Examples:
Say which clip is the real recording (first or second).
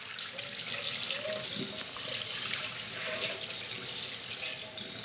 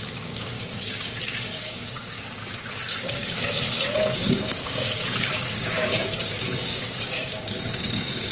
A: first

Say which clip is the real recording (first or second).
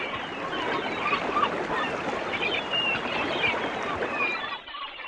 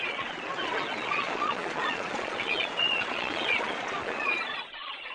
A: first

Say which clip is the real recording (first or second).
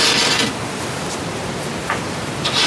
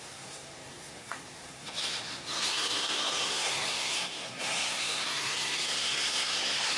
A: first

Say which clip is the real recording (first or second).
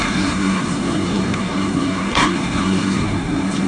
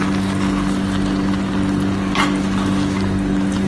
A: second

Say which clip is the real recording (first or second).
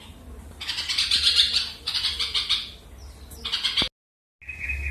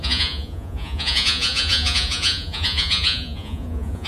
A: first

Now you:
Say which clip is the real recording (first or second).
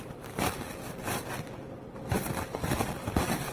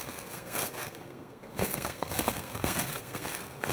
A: first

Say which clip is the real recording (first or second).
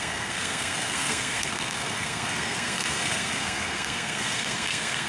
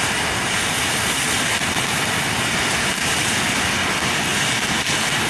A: second